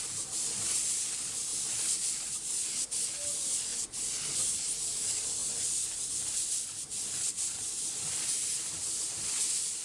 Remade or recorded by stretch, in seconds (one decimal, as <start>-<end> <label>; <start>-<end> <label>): 0.0-1.5 recorded; 1.5-2.1 remade; 2.1-3.7 recorded; 3.7-4.5 remade; 4.5-5.4 recorded; 5.4-6.0 remade; 6.0-9.8 recorded